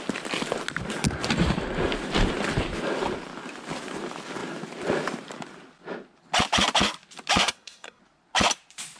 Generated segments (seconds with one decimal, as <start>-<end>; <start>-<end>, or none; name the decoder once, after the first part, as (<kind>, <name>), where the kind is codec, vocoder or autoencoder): 7.4-8.0 (codec, SNAC)